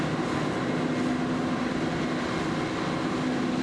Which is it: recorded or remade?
recorded